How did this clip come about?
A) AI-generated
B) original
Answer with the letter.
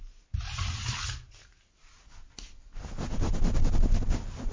B